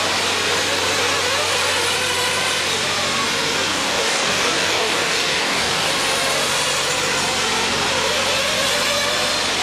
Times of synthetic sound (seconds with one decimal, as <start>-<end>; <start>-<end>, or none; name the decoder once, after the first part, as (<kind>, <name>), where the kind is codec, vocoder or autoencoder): 3.7-5.9 (codec, DAC)